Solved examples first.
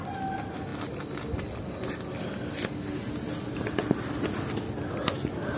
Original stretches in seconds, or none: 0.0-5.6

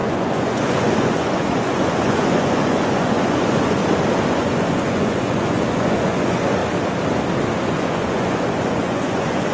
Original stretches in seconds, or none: 3.8-4.3; 6.6-7.7

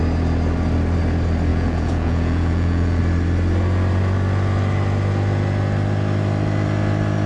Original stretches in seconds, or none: 0.0-1.5; 3.0-7.3

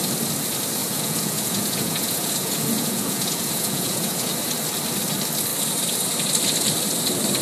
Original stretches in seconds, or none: 0.0-0.8; 4.3-7.4

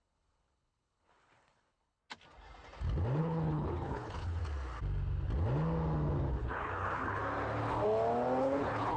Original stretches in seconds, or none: 2.0-3.2; 4.4-6.3; 7.2-8.4